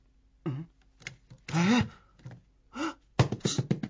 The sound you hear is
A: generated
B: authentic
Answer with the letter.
B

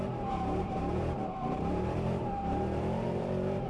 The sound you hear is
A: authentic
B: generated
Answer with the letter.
B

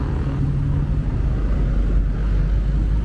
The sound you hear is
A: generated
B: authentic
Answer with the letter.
B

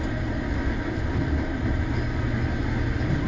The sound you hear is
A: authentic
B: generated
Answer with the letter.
A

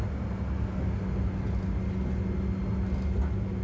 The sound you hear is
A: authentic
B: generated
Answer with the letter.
A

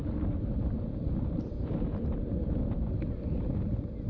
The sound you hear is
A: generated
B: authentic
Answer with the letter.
B